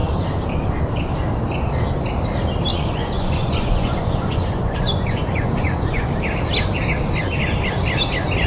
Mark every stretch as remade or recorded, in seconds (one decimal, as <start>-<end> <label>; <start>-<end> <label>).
0.0-2.7 recorded; 2.7-6.1 remade; 6.1-8.5 recorded